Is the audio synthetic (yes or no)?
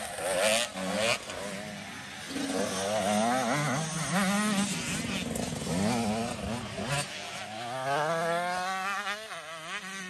no